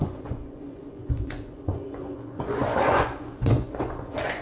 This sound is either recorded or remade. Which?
remade